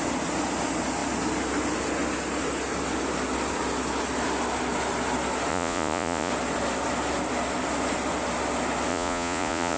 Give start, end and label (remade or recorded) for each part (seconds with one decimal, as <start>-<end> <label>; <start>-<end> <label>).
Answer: 0.0-5.5 recorded; 5.5-6.3 remade; 6.3-8.9 recorded; 8.9-9.8 remade